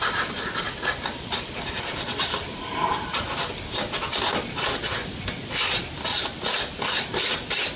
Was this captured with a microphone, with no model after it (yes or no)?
yes